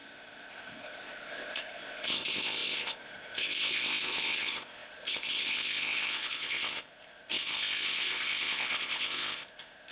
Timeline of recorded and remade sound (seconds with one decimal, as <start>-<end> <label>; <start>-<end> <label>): 0.0-9.9 remade